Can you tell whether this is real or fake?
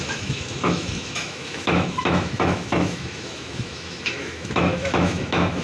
fake